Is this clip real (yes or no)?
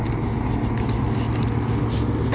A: yes